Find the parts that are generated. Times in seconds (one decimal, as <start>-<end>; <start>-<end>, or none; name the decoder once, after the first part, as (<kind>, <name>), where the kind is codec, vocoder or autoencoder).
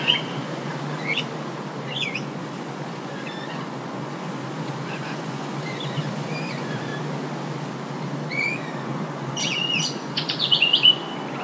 0.0-0.7 (vocoder, Vocos); 1.8-6.9; 8.3-11.4